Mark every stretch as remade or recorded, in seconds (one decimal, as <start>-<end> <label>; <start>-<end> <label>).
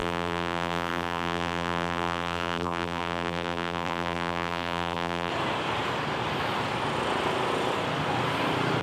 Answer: 0.0-5.3 remade; 5.3-8.8 recorded